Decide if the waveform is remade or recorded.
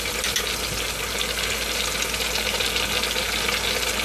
recorded